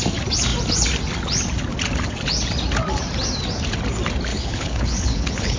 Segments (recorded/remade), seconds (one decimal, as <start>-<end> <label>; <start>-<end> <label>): 0.0-4.3 recorded; 4.3-5.6 remade